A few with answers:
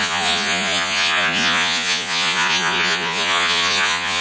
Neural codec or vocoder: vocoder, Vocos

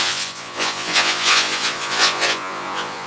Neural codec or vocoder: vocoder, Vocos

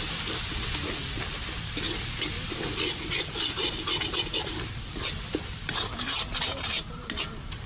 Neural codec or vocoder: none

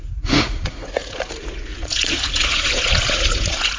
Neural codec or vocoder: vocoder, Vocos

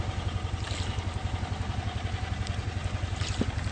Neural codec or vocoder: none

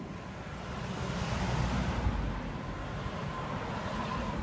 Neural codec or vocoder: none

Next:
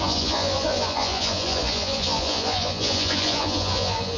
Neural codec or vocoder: vocoder, Vocos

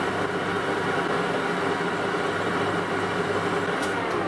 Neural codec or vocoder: none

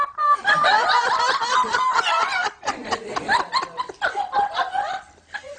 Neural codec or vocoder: none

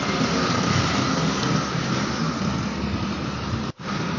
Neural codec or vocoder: none